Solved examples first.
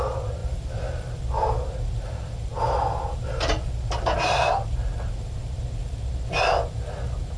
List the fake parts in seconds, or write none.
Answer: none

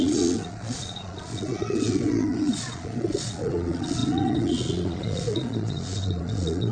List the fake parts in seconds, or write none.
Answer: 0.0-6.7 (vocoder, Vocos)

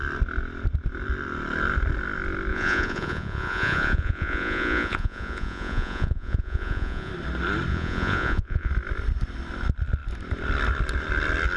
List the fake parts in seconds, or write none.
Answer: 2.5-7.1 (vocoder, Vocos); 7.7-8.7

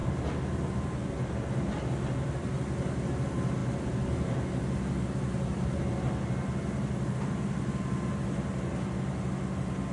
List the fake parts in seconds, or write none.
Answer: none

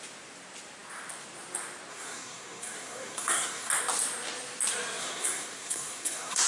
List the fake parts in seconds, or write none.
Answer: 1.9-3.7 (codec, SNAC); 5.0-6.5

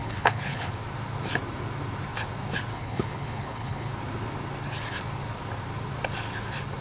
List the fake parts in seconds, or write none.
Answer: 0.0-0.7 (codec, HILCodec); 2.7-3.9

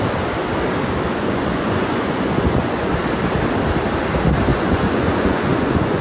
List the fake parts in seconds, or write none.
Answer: 1.1-2.9 (vocoder, Vocos); 4.5-6.0